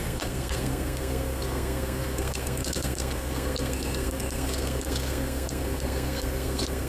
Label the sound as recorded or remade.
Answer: remade